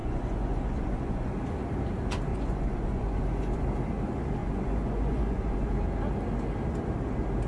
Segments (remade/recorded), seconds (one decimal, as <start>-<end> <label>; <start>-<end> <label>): 0.0-1.3 remade; 1.3-2.3 recorded; 2.3-3.6 remade; 3.6-4.4 recorded; 4.4-5.7 remade; 5.7-7.5 recorded